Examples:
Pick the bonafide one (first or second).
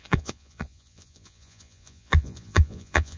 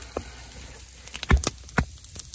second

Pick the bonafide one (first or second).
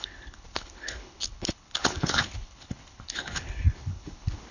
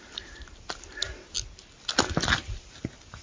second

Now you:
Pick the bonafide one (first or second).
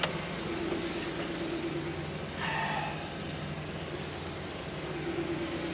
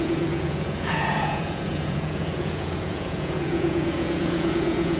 first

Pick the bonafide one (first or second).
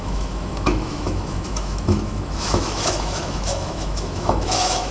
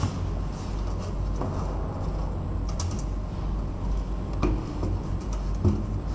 second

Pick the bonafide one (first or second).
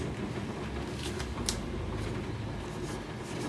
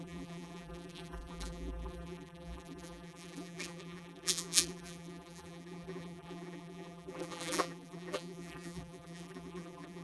first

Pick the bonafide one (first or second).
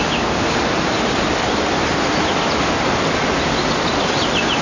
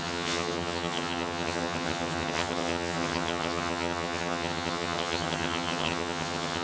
first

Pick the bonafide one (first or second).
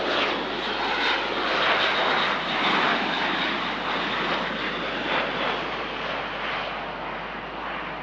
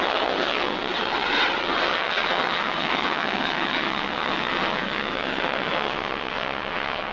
first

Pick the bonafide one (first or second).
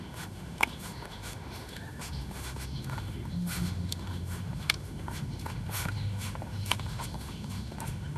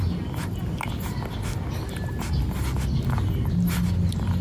second